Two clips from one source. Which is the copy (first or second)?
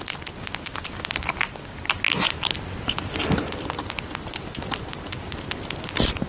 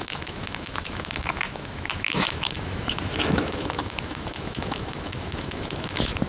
second